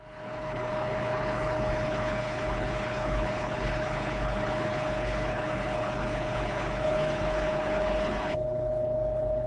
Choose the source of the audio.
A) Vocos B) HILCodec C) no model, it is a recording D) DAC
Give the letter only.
B